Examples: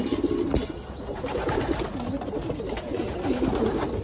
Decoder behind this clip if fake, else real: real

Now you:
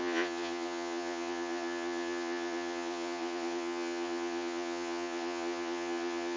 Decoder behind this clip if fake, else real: fake, vocoder, Vocos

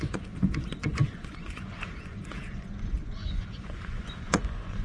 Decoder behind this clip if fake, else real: fake, vocoder, Vocos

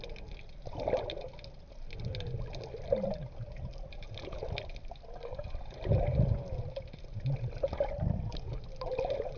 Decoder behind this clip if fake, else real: real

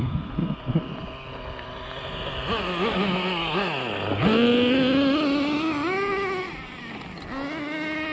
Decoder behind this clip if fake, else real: real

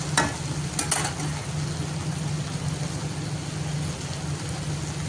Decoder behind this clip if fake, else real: real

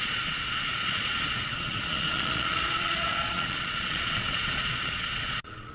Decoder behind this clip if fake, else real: fake, vocoder, Vocos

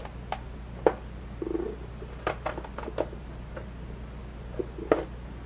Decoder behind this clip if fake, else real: real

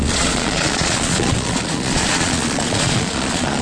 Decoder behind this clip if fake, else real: fake, vocoder, Vocos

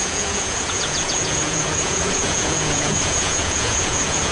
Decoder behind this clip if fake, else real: fake, vocoder, Vocos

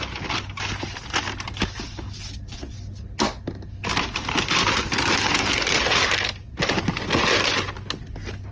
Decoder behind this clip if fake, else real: real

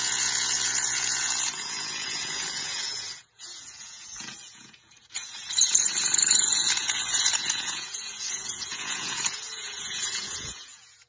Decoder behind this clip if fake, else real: fake, vocoder, Vocos